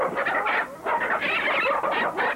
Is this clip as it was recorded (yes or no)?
yes